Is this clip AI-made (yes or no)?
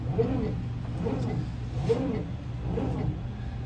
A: no